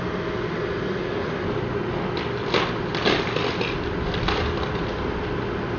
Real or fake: real